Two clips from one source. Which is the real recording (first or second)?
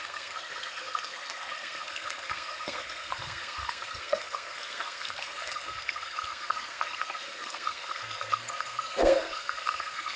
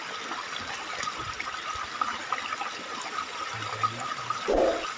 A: second